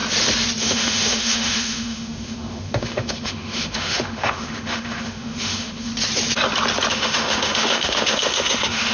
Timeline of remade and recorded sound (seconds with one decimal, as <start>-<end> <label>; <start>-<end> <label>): 0.0-0.6 recorded; 0.6-5.9 remade; 5.9-6.9 recorded; 6.9-8.9 remade